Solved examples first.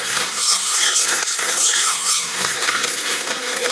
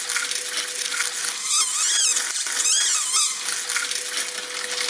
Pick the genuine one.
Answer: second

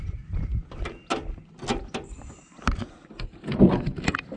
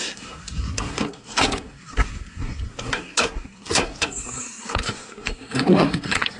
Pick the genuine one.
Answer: first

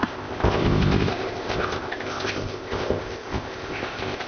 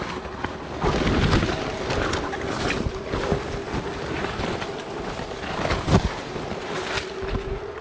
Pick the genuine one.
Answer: second